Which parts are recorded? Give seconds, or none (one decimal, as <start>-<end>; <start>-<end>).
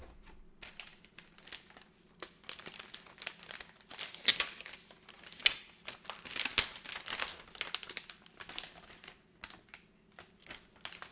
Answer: 0.0-11.1